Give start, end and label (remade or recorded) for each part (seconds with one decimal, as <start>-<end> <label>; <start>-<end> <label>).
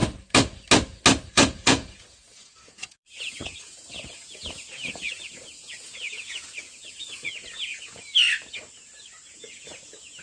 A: 0.0-1.3 recorded; 1.3-8.1 remade; 8.1-9.3 recorded; 9.3-10.2 remade